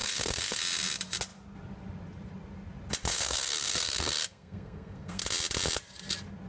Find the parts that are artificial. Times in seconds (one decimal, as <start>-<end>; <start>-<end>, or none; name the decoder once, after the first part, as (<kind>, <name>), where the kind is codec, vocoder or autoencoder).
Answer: 0.0-0.6 (codec, SNAC); 3.1-5.2